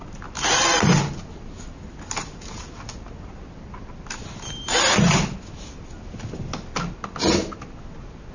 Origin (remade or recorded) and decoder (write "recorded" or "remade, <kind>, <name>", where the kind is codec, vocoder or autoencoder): recorded